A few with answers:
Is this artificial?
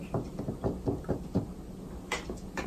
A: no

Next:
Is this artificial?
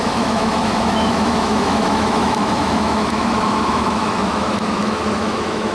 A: yes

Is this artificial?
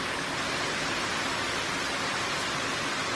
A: no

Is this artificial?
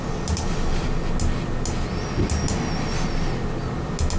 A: no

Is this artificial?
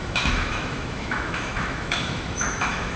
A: yes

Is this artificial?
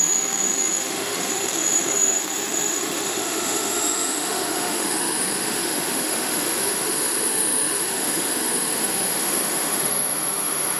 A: yes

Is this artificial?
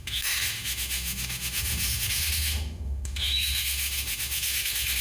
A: yes